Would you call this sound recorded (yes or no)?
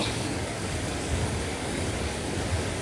no